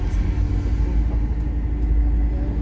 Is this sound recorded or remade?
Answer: recorded